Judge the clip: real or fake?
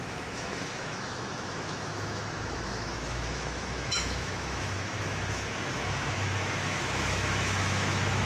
fake